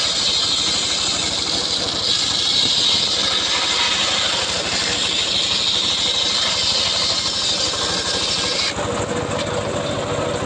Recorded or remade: recorded